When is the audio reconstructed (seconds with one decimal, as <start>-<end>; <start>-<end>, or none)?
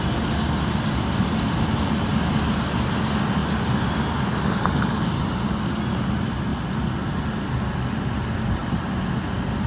none